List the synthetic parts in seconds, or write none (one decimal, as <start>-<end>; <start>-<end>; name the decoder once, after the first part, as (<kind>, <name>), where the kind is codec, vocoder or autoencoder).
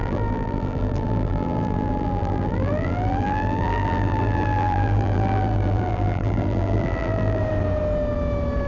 0.0-7.4 (vocoder, BigVGAN v2)